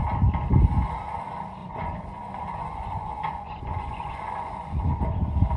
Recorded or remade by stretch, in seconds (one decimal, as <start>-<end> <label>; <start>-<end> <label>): 0.0-1.6 recorded; 1.6-5.0 remade; 5.0-5.6 recorded